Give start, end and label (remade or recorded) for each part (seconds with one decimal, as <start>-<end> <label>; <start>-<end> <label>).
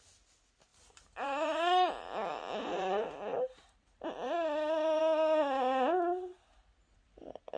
0.0-0.7 recorded; 0.7-1.9 remade; 1.9-2.3 recorded; 2.3-5.0 remade; 5.0-7.6 recorded